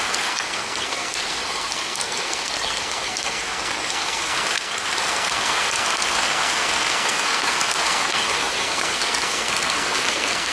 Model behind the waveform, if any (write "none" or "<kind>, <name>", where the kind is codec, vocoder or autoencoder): codec, SNAC